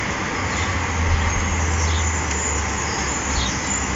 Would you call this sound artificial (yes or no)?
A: no